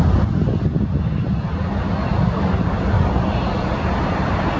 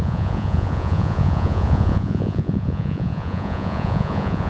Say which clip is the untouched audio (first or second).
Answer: first